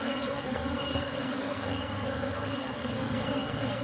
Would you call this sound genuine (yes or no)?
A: no